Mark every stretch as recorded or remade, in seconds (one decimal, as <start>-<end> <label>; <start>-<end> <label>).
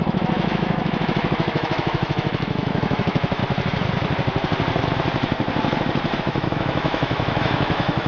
0.0-3.4 remade; 3.4-6.2 recorded; 6.2-8.1 remade